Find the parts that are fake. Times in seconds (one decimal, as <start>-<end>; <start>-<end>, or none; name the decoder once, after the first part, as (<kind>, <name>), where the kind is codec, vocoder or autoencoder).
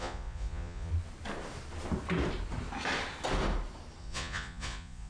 0.0-0.9 (vocoder, Vocos); 4.0-5.1